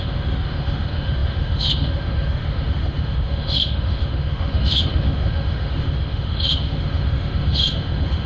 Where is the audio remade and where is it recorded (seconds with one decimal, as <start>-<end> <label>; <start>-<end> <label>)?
0.0-8.3 remade